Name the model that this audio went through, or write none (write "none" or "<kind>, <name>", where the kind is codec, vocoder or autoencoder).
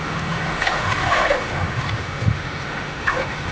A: autoencoder, DAC-VAE